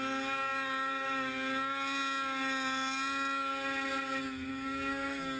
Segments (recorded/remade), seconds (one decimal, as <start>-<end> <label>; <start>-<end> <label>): 0.0-4.5 recorded; 4.5-5.4 remade